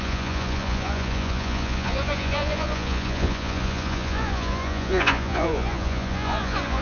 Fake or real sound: fake